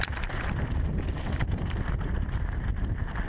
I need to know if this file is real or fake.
fake